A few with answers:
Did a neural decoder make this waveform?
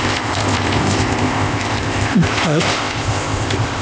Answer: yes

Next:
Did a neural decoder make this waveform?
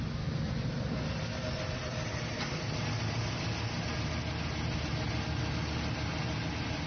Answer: no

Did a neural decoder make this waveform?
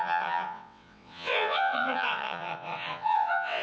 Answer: yes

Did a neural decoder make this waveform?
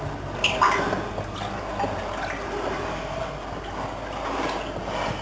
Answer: no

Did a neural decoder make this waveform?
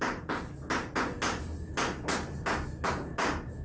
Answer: no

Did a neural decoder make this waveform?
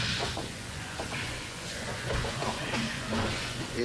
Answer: yes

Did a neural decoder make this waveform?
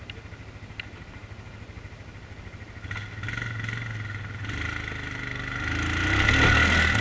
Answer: no